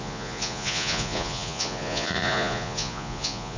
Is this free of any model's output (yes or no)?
no